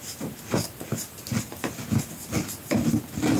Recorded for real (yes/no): yes